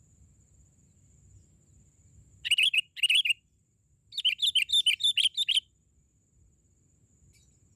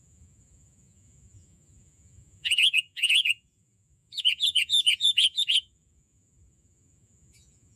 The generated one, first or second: second